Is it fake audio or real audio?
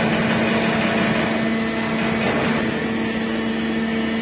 real